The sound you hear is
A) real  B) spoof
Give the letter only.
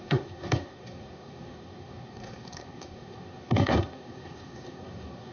B